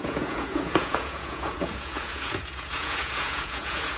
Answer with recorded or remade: remade